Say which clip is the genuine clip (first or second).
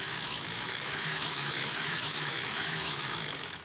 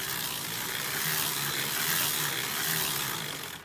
second